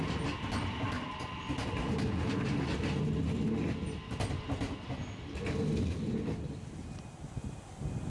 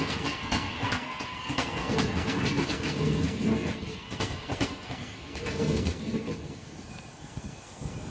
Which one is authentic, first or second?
first